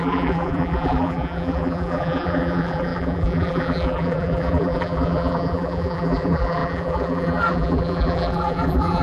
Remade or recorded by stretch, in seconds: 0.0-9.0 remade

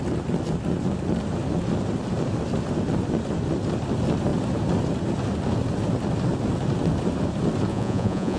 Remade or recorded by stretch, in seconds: 0.0-7.7 recorded; 7.7-8.4 remade

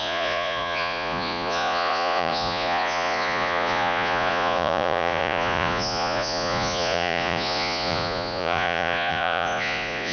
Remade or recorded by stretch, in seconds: 0.0-10.1 remade